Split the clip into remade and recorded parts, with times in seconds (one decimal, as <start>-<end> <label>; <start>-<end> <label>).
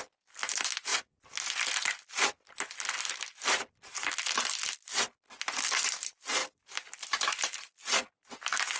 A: 0.0-8.8 recorded